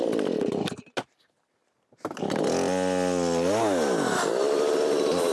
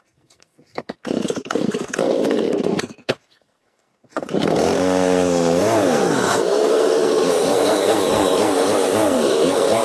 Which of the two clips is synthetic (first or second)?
second